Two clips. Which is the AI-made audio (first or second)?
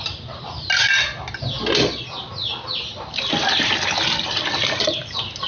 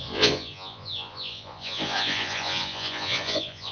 second